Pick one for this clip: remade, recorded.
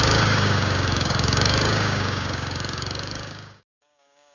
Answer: remade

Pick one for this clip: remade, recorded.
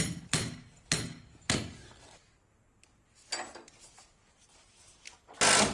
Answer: recorded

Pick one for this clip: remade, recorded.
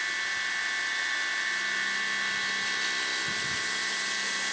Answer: recorded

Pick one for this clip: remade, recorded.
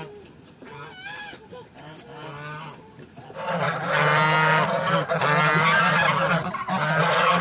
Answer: recorded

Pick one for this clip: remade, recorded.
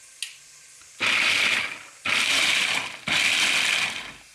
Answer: recorded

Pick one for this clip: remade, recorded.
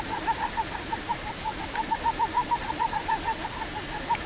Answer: recorded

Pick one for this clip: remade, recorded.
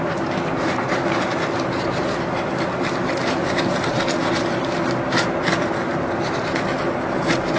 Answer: remade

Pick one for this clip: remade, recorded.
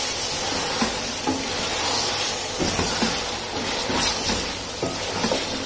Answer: recorded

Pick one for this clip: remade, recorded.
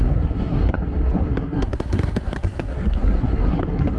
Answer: remade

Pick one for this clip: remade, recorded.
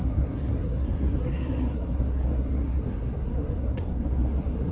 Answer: remade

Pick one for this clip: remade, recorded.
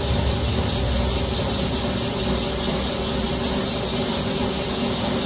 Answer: recorded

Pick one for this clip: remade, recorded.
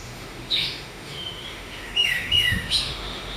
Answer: remade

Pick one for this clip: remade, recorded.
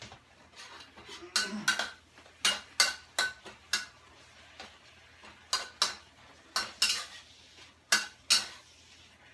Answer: recorded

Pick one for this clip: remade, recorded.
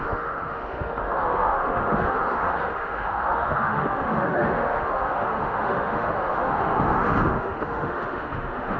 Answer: remade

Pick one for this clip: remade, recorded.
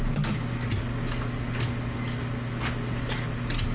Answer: recorded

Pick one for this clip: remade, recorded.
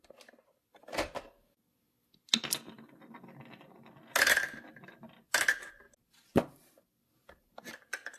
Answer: recorded